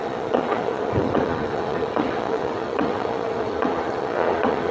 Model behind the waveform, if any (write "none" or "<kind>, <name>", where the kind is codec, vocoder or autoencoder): vocoder, Vocos